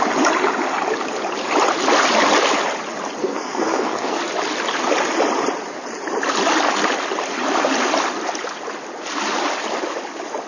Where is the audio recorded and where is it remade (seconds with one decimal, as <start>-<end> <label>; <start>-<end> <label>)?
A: 0.0-3.2 recorded; 3.2-4.2 remade; 4.2-10.5 recorded